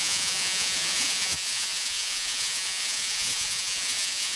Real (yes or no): no